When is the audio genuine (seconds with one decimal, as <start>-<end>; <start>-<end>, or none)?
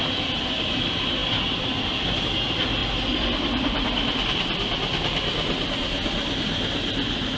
0.0-2.8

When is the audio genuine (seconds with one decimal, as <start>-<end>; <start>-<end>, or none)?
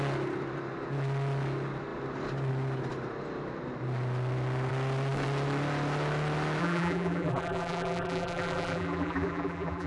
0.0-6.6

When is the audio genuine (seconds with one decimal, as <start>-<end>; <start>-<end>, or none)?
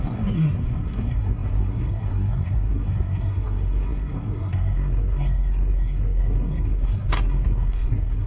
none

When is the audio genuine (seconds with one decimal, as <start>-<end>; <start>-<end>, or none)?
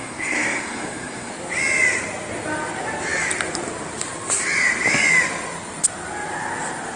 1.3-7.0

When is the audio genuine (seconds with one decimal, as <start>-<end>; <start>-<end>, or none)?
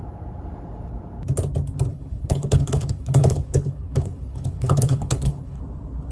0.0-1.9; 5.6-6.1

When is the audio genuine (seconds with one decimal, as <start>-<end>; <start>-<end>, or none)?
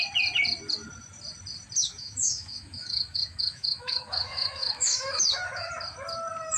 0.0-1.8; 5.7-6.6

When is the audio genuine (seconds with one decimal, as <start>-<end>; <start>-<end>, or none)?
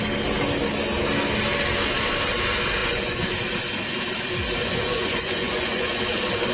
0.0-2.8; 3.3-4.6; 6.0-6.5